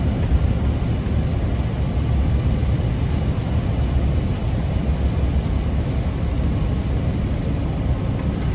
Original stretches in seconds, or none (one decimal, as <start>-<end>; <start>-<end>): 0.0-8.5